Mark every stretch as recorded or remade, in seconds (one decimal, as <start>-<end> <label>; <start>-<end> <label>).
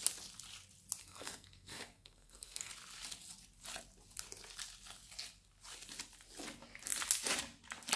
0.0-1.0 recorded; 1.0-2.7 remade; 2.7-8.0 recorded